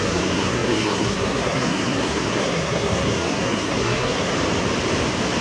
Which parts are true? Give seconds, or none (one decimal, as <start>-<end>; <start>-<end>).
4.3-5.4